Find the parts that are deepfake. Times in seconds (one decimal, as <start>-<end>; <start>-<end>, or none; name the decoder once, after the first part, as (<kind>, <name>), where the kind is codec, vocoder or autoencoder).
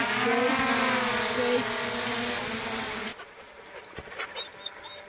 3.1-3.6 (vocoder, Vocos)